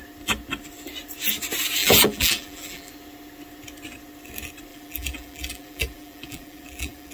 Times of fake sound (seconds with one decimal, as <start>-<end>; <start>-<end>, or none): 1.8-2.9; 4.7-7.1